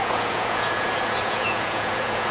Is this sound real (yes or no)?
no